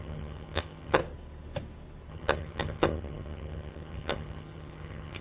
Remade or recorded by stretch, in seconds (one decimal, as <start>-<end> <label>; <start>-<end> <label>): 0.0-1.0 remade; 1.0-2.1 recorded; 2.1-5.2 remade

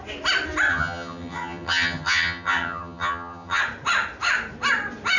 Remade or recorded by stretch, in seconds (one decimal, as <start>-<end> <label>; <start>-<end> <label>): 0.0-0.7 recorded; 0.7-3.6 remade; 3.6-5.2 recorded

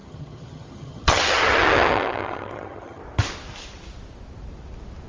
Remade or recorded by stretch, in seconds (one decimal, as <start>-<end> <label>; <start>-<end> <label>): 0.0-3.0 remade; 3.0-5.1 recorded

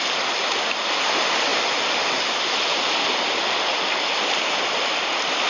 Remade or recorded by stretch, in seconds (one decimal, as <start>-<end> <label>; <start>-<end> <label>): 0.0-5.5 recorded